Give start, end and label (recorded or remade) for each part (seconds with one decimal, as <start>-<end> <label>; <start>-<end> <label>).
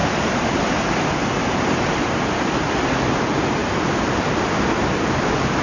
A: 0.0-2.2 remade; 2.2-5.6 recorded